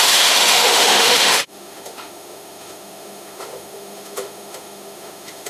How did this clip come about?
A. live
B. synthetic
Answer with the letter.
B